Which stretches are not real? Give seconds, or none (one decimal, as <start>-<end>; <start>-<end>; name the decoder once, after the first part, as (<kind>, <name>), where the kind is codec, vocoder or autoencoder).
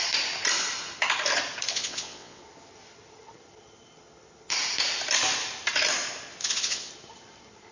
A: 1.7-2.4 (vocoder, WaveNeXt); 6.4-6.9